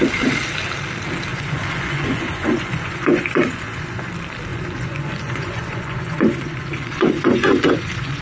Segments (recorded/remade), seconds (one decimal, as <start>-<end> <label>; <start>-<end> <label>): 0.0-1.3 recorded; 1.3-4.1 remade; 4.1-4.5 recorded; 4.5-8.2 remade